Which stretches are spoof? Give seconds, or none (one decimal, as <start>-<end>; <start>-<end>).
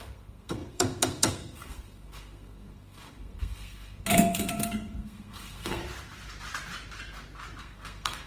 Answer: 0.0-5.8; 7.6-8.3